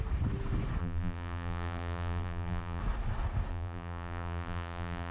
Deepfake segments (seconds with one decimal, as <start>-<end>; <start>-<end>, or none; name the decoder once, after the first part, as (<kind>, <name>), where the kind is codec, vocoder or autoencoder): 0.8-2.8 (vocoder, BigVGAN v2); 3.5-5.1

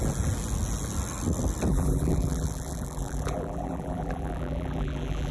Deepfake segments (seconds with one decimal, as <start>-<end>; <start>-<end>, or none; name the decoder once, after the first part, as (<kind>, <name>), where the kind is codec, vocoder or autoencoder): 1.7-5.3 (vocoder, BigVGAN v2)

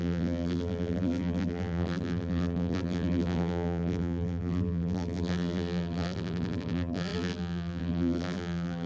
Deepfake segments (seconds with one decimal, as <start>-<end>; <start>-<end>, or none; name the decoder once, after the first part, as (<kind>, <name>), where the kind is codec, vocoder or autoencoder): 0.0-8.9 (vocoder, BigVGAN v2)